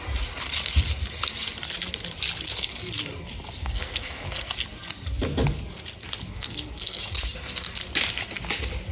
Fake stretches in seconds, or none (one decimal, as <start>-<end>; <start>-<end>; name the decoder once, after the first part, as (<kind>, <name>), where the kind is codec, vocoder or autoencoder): 3.6-4.5 (codec, SNAC); 6.3-7.0